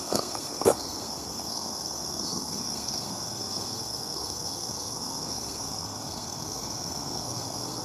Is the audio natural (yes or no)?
no